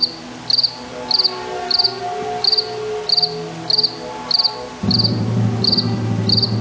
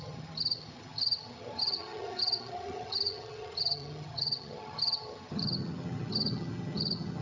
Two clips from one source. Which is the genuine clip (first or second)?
first